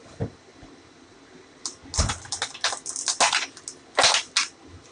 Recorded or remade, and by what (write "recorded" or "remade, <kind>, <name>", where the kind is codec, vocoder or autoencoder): recorded